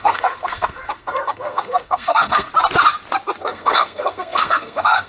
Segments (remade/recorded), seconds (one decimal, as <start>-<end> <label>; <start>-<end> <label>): 0.0-2.5 remade; 2.5-3.4 recorded; 3.4-5.1 remade